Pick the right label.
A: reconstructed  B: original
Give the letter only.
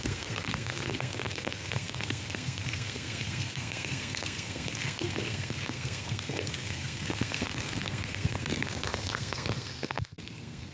A